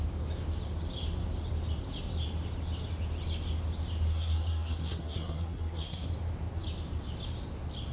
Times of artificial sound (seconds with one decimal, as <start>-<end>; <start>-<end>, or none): 4.1-6.1